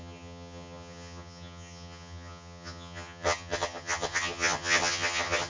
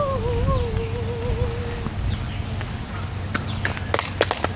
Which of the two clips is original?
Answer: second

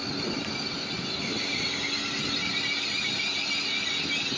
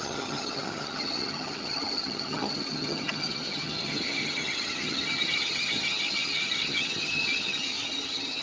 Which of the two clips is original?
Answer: first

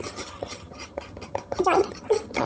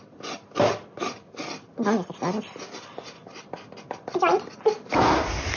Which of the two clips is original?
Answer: second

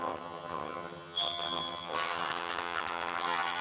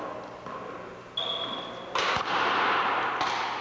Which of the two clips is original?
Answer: second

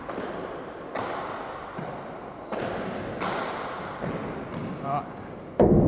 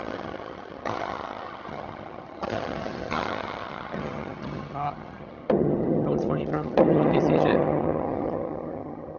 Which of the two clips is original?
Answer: first